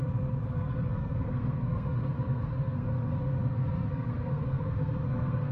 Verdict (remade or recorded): remade